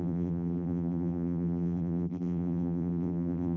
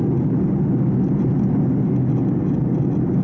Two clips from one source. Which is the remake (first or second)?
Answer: first